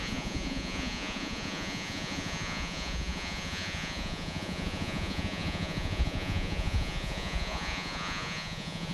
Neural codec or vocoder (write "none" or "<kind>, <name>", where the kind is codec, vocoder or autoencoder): vocoder, Vocos